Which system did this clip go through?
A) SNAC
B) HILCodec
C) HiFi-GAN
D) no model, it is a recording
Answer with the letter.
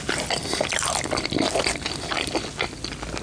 D